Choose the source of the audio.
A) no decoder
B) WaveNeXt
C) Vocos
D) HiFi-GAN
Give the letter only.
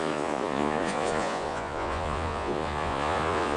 C